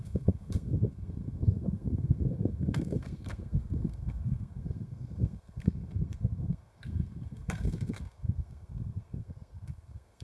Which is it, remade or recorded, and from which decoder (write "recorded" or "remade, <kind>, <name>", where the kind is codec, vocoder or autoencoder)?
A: remade, codec, SNAC